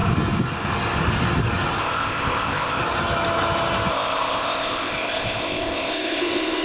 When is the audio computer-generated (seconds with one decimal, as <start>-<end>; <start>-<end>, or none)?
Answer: 1.8-2.8; 3.9-6.6